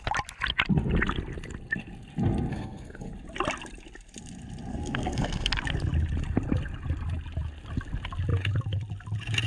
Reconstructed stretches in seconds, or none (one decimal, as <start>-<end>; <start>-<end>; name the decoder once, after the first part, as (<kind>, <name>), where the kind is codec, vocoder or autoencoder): 2.5-3.1 (codec, SNAC); 4.7-5.5